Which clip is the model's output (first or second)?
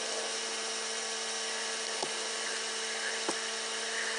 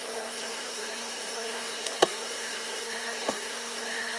second